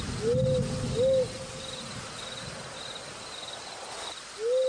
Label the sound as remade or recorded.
recorded